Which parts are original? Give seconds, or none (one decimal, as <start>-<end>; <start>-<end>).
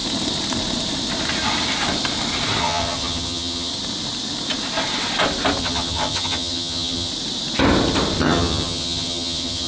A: 0.0-2.6; 3.7-5.6; 7.1-8.2